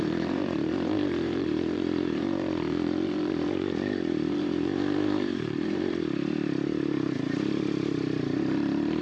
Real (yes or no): no